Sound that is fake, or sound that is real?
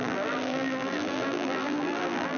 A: fake